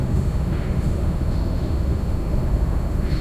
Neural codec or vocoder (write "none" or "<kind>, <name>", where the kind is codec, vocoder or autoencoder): autoencoder, DAC-VAE